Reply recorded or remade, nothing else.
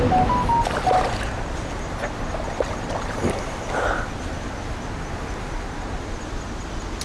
recorded